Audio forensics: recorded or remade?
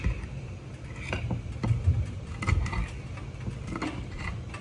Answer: recorded